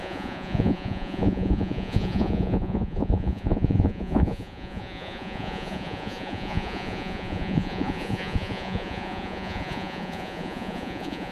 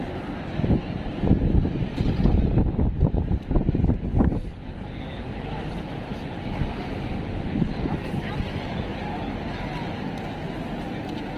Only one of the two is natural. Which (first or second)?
second